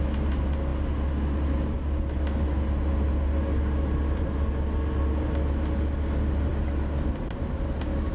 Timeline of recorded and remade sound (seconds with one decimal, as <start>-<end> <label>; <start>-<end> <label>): 0.0-8.1 recorded